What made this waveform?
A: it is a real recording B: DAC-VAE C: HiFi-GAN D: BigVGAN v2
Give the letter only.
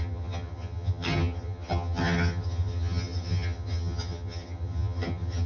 C